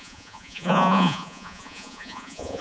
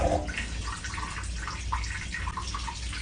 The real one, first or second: second